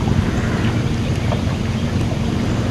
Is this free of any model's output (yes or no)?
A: yes